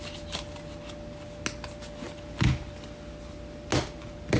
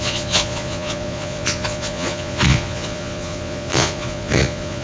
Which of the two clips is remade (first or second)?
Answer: second